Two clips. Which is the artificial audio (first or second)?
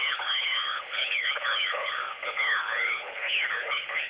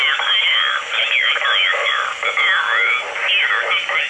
first